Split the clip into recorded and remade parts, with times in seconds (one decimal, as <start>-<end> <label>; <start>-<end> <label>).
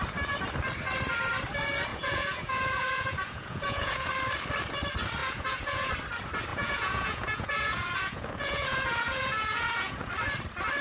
0.0-1.9 recorded; 1.9-4.1 remade; 4.1-5.2 recorded; 5.2-5.9 remade; 5.9-6.5 recorded; 6.5-10.1 remade; 10.1-10.8 recorded